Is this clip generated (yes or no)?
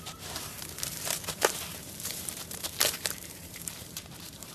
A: yes